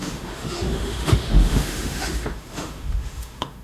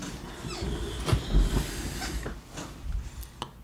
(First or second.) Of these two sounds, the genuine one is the second